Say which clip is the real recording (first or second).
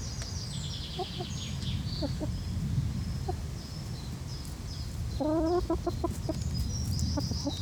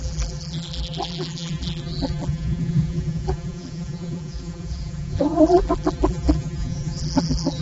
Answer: first